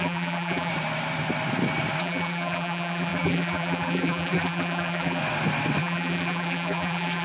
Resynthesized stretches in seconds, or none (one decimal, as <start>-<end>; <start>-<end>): 0.0-0.7; 2.0-5.2; 5.8-7.2